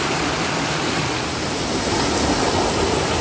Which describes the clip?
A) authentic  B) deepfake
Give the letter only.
A